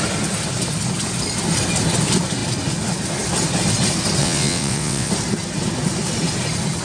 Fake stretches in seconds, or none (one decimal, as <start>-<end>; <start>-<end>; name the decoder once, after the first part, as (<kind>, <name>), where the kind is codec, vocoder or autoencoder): 4.2-5.1 (vocoder, WaveNeXt)